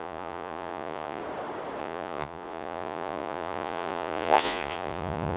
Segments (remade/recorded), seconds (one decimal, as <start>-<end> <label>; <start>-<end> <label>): 0.0-1.2 remade; 1.2-1.8 recorded; 1.8-5.4 remade